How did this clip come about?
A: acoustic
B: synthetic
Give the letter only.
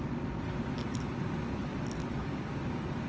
A